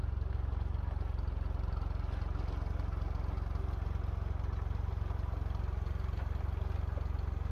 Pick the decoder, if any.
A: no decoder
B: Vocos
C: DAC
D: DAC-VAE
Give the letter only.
A